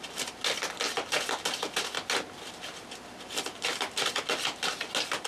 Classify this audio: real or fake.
real